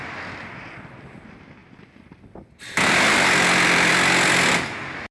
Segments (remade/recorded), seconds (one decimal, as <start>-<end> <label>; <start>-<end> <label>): 0.0-5.1 recorded